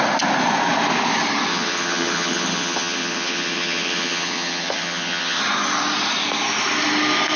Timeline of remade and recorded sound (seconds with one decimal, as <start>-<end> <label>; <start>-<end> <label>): 0.0-1.5 recorded; 1.5-5.4 remade; 5.4-7.4 recorded